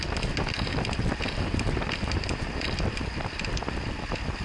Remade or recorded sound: recorded